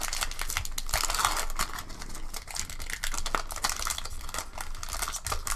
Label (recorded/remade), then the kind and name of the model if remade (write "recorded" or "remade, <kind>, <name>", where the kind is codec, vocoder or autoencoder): recorded